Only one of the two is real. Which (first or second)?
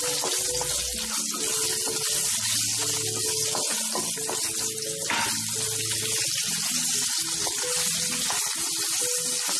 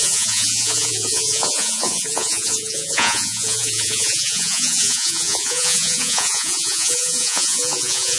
first